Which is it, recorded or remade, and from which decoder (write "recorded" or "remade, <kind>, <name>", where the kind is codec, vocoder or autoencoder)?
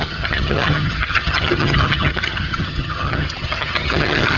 remade, vocoder, HiFi-GAN